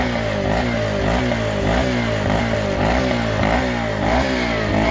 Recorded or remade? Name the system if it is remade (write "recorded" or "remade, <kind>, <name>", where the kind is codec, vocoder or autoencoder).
recorded